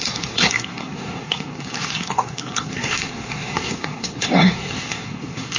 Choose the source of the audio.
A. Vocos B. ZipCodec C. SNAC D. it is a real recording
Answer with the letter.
C